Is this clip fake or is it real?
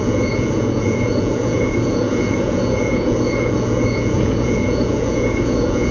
fake